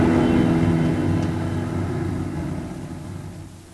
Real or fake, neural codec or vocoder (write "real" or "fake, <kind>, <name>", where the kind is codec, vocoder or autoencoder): real